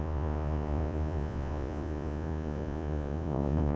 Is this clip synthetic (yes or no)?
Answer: yes